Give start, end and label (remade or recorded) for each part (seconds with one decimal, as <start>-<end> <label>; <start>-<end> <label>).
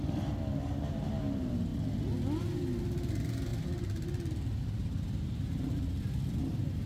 0.0-6.9 recorded